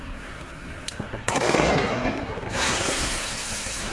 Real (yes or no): no